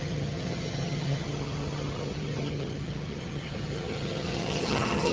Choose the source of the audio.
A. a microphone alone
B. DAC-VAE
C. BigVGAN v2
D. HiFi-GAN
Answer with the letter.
D